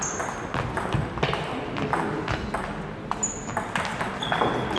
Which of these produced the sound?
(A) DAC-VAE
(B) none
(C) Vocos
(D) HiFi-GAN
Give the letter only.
B